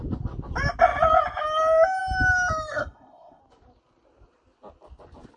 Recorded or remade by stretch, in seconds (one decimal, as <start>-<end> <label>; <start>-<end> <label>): 0.0-2.7 recorded; 2.7-3.4 remade; 3.4-5.4 recorded